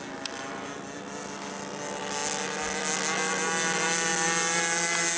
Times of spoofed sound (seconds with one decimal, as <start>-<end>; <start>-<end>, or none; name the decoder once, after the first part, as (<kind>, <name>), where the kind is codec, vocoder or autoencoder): none